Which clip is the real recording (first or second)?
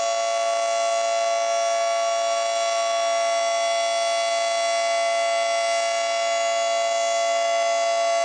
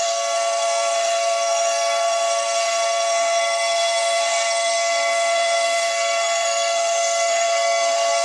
first